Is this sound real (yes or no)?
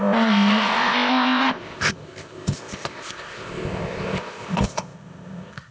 no